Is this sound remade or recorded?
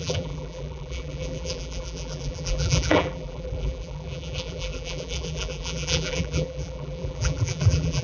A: remade